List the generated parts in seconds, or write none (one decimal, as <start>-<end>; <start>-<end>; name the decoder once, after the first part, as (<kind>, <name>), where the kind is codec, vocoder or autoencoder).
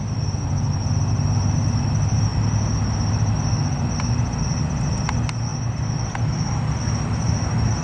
none